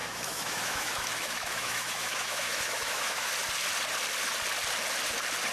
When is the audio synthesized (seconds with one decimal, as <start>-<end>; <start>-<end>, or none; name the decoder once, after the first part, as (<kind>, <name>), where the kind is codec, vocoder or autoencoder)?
0.0-3.3 (autoencoder, DAC-VAE)